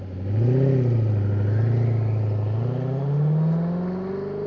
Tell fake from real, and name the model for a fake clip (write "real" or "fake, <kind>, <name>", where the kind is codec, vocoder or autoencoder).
real